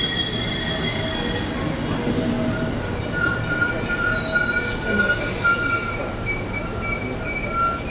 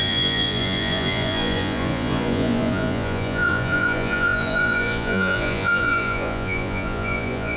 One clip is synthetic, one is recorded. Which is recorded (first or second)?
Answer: first